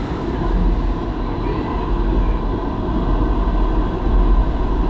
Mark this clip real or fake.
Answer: real